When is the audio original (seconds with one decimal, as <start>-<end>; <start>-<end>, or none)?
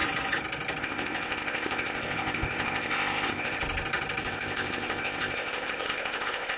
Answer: 0.0-0.8; 3.6-4.2